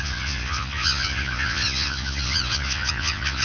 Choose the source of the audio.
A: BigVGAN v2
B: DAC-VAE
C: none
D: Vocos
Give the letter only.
D